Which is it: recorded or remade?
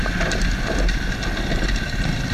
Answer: recorded